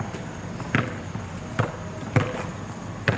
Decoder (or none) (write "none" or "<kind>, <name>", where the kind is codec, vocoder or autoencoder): none